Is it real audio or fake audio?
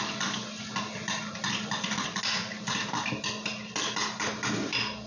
real